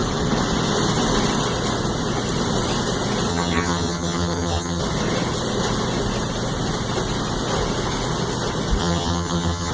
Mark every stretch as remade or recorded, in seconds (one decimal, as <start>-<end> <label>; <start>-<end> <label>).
0.0-3.3 recorded; 3.3-4.8 remade; 4.8-8.8 recorded; 8.8-9.7 remade